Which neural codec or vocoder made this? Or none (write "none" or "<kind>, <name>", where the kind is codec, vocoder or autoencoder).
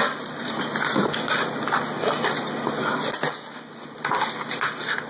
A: none